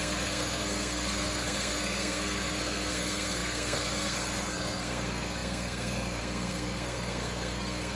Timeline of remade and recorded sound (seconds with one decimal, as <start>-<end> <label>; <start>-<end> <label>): 0.0-8.0 remade